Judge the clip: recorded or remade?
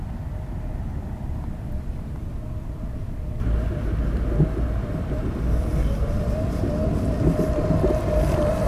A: recorded